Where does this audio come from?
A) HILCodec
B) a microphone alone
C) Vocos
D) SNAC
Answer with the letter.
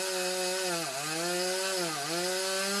B